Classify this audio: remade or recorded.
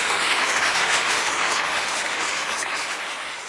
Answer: remade